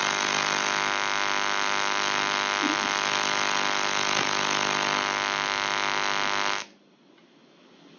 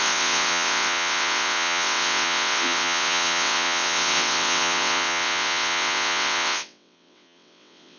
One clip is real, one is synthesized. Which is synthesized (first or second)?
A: second